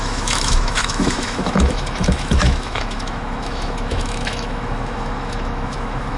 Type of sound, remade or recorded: remade